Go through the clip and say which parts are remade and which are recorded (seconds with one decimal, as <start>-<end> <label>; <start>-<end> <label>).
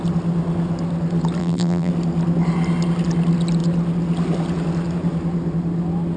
0.0-1.4 recorded; 1.4-1.9 remade; 1.9-6.2 recorded